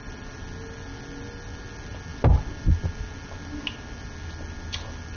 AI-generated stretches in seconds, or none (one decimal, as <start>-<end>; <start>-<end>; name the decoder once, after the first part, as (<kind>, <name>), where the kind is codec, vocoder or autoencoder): none